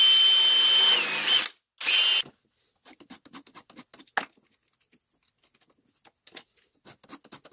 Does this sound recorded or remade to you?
recorded